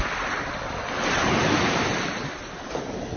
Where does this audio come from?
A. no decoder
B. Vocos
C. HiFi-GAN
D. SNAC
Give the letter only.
A